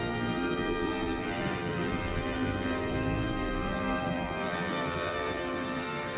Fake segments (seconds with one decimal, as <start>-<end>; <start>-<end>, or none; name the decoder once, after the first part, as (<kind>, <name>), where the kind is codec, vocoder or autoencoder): 0.0-6.2 (vocoder, BigVGAN v2)

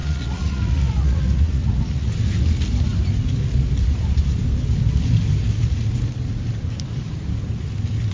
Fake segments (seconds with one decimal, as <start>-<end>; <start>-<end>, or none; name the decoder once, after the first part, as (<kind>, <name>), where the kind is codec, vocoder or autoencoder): 0.0-2.1 (vocoder, Vocos)